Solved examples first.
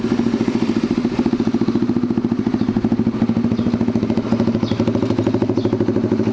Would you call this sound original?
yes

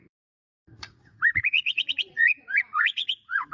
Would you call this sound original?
no